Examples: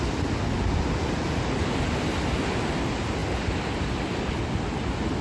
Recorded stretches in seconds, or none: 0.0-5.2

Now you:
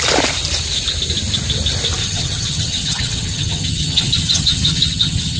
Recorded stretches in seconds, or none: 0.0-2.0

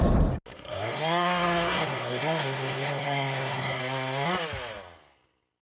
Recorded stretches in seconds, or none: 0.0-0.5; 3.8-5.6

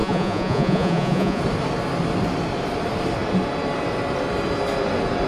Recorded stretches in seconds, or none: 1.4-5.3

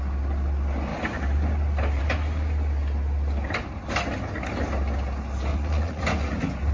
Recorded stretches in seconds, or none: 0.0-5.5; 6.0-6.7

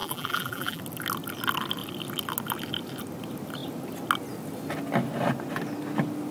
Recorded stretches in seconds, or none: 0.8-6.3